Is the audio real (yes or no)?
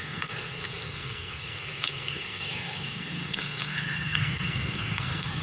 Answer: no